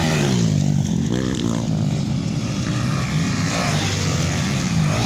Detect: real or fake real